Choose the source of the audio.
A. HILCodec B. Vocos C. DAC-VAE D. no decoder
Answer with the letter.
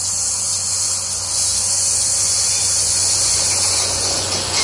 B